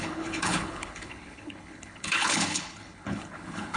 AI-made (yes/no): yes